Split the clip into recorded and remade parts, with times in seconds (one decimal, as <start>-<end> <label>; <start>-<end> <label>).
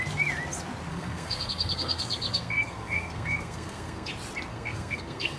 0.0-0.9 recorded; 0.9-4.1 remade; 4.1-4.5 recorded; 4.5-5.4 remade